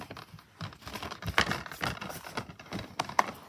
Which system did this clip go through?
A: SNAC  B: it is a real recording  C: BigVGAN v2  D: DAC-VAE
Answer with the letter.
B